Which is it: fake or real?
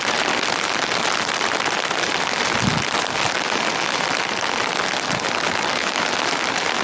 real